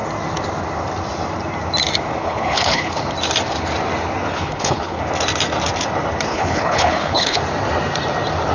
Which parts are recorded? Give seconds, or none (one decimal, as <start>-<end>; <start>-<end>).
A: 0.0-2.2; 3.0-4.3; 5.0-6.3; 7.4-8.5